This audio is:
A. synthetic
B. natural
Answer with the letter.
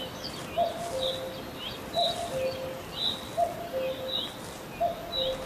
B